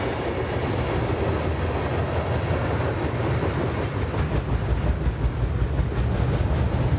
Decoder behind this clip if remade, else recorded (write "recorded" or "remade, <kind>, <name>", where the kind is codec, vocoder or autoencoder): recorded